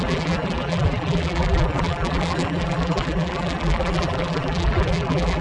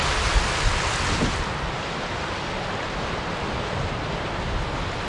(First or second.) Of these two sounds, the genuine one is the second